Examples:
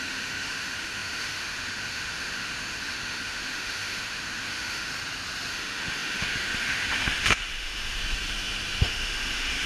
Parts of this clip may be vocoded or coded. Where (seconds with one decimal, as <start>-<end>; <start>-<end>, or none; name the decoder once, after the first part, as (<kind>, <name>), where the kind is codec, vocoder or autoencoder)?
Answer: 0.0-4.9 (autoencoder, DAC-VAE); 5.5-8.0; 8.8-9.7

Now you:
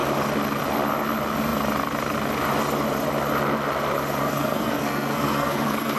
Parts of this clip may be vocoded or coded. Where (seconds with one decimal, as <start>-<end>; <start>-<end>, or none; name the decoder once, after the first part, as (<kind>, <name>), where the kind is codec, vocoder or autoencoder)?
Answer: 4.2-6.0 (codec, SNAC)

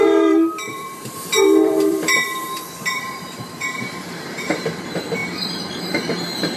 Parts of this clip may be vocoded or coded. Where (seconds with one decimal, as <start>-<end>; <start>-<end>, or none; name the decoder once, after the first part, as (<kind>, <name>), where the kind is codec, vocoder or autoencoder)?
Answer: 0.0-6.6 (vocoder, BigVGAN v2)

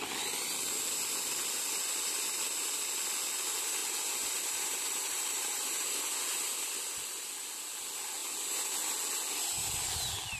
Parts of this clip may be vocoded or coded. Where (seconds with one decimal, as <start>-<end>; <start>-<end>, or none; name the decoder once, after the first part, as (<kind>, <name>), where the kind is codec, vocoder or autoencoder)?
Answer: 3.8-5.9 (vocoder, BigVGAN v2)